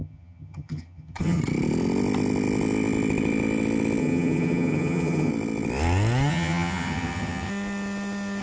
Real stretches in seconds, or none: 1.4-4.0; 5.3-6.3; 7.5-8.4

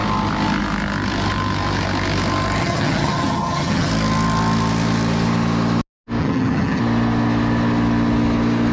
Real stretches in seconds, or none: 0.0-2.6; 3.9-6.2; 6.8-8.7

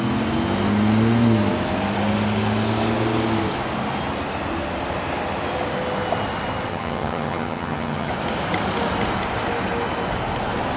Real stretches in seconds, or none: 0.0-6.7; 8.1-10.8

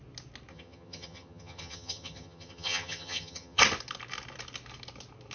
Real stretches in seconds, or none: 0.0-0.5; 3.6-5.3

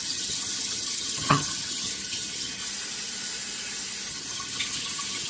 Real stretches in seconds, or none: 2.6-4.1

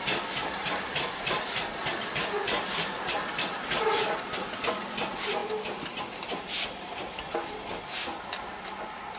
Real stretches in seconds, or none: 0.0-9.2

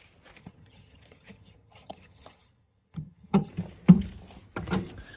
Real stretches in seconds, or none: 0.0-0.4; 3.5-5.2

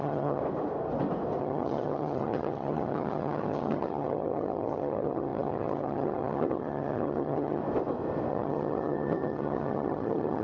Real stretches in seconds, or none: 0.4-1.4; 7.6-8.3